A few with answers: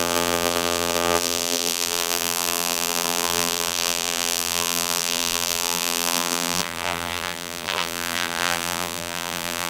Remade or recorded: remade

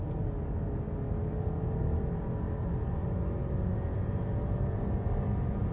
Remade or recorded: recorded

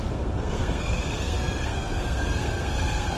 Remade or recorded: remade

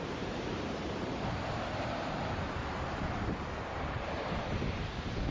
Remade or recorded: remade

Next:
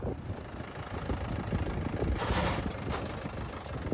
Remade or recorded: recorded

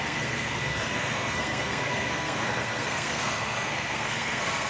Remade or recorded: remade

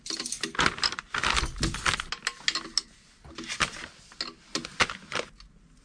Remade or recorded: recorded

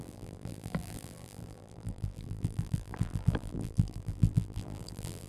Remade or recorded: remade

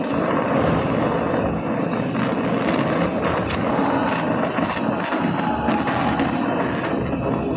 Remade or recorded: recorded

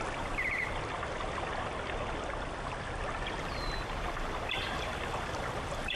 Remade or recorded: recorded